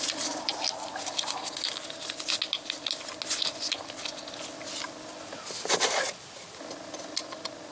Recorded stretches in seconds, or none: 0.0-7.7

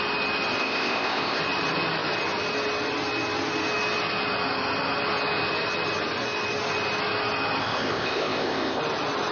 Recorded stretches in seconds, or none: 0.0-0.6; 1.4-7.6; 8.8-9.3

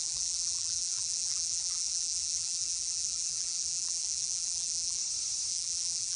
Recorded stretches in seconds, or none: 5.0-5.5

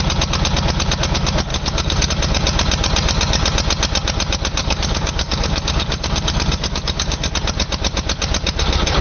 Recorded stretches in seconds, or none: 0.0-1.5; 2.1-4.6; 7.3-9.0

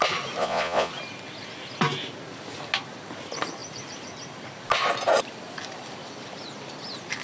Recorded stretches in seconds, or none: 0.0-0.4; 0.9-7.2

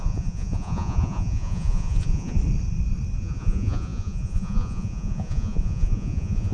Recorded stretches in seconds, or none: 2.4-3.2

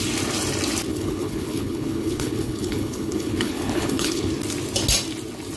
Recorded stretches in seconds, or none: 0.0-0.9; 4.3-5.6

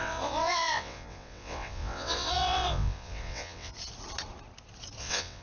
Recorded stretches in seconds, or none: 3.7-5.0